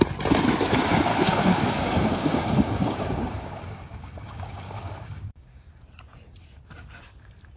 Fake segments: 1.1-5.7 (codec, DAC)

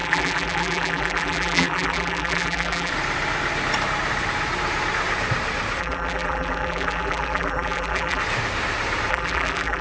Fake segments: 0.0-2.9 (vocoder, BigVGAN v2); 5.8-8.2; 9.1-9.8

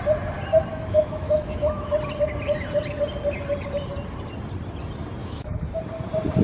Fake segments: 0.7-1.9 (autoencoder, DAC-VAE); 5.2-5.8

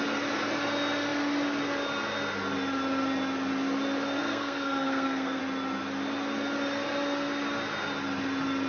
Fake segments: 4.2-5.4 (codec, SNAC)

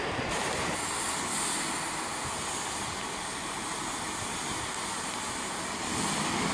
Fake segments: none